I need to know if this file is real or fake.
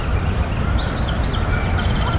real